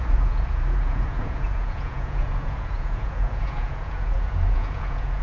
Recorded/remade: remade